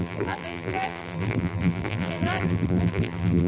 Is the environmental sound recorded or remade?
remade